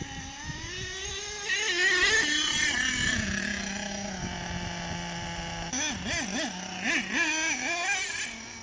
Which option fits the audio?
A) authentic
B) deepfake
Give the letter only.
A